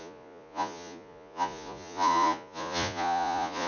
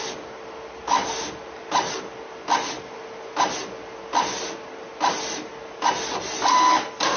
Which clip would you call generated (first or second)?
first